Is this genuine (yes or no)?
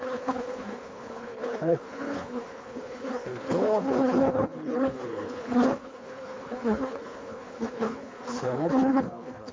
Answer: no